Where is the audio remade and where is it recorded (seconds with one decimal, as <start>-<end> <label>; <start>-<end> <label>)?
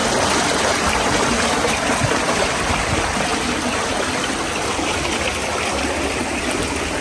0.0-3.3 recorded; 3.3-5.8 remade; 5.8-7.0 recorded